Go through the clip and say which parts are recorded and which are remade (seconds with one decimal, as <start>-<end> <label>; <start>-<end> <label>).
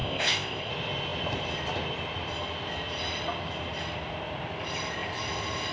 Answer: 0.0-0.7 remade; 0.7-5.7 recorded